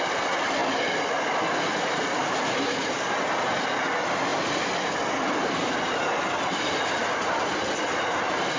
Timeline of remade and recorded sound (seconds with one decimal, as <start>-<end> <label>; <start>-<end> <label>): 0.0-8.6 recorded